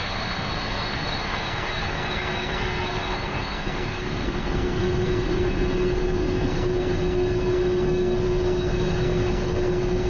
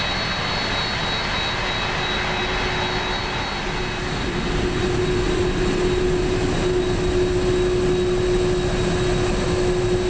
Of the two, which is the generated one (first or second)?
first